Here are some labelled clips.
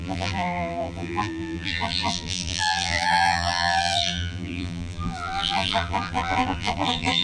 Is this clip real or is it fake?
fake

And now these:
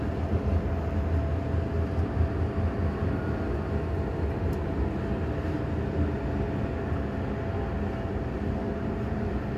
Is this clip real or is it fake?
real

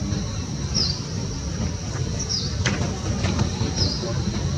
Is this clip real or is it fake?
real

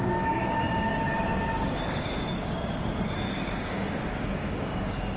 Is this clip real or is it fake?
fake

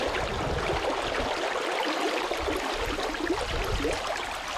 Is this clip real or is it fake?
real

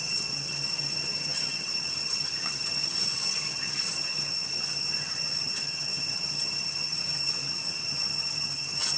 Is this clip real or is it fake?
fake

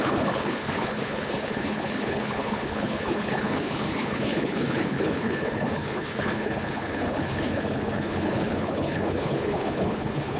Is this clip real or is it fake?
fake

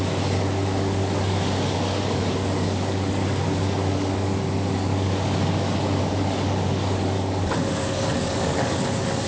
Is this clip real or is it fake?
fake